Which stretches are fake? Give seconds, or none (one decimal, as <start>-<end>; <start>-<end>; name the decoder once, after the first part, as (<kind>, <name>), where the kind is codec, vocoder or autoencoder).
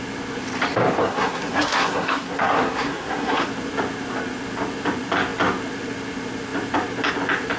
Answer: 1.0-3.5 (codec, SNAC)